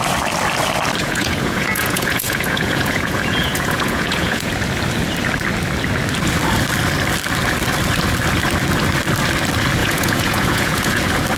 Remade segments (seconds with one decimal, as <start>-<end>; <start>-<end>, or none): 1.0-4.5; 9.8-11.0

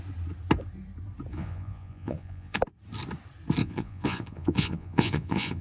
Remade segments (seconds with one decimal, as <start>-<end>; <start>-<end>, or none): 1.3-2.6; 3.6-5.6